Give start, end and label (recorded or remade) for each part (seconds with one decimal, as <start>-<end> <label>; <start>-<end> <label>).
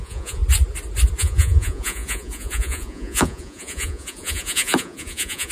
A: 0.0-0.4 remade; 0.4-1.2 recorded; 1.2-5.5 remade